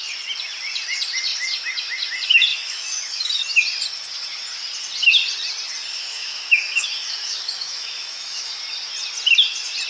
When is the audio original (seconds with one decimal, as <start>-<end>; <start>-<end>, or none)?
0.0-2.5; 3.4-5.9; 8.6-9.9